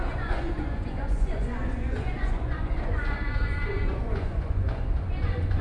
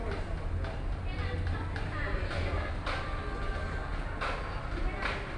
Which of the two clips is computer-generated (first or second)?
first